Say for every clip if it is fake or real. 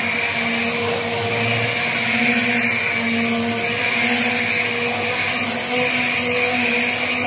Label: real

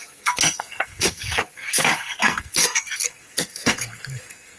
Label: fake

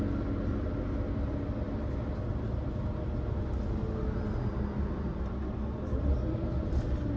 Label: real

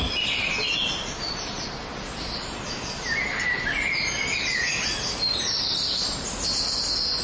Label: real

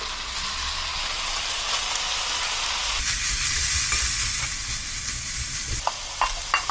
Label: real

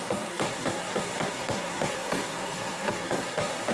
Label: fake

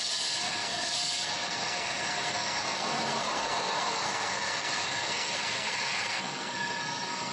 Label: fake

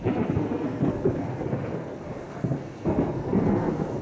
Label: fake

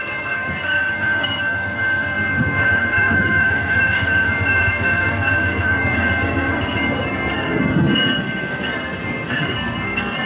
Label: fake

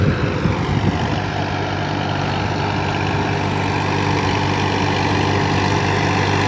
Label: real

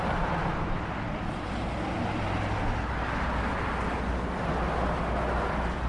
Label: real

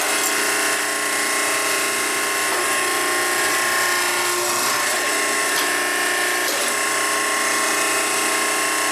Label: real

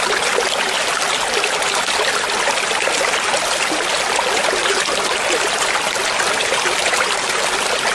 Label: real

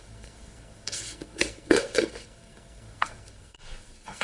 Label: fake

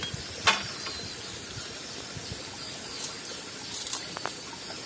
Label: real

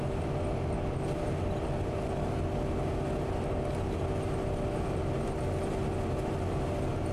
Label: real